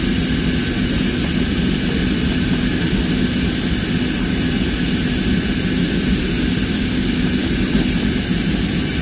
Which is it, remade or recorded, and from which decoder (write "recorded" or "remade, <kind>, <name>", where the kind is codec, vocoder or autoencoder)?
recorded